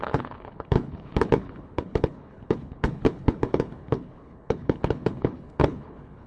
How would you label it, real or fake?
fake